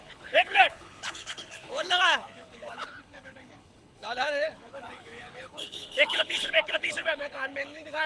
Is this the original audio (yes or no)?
no